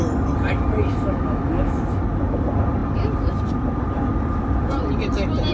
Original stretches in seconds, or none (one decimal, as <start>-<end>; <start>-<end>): 0.0-0.8; 2.0-5.5